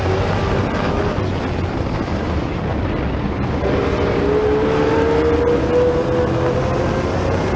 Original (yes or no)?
yes